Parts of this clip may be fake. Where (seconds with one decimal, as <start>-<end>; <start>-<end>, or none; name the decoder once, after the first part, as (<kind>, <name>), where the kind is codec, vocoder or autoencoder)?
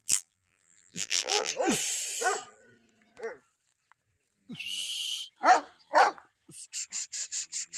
0.0-1.5 (vocoder, BigVGAN v2)